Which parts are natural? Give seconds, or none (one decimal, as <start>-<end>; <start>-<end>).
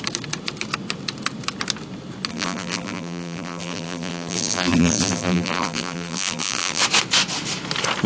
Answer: 0.0-2.3; 6.8-8.1